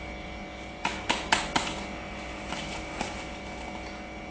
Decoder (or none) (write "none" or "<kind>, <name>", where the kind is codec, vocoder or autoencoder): none